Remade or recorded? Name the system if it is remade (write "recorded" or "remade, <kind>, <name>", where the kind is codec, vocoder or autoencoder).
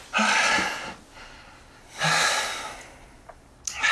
recorded